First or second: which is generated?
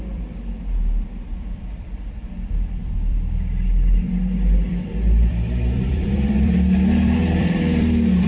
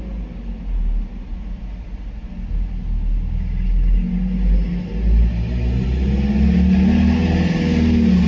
first